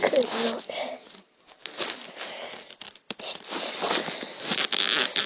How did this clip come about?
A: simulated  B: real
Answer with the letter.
B